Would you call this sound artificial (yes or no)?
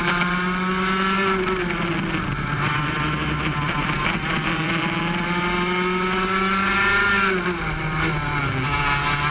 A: no